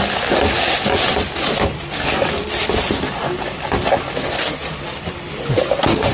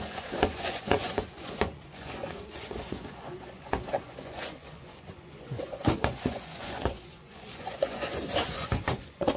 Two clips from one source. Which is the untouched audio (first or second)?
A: first